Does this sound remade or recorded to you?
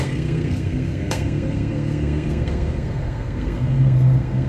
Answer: remade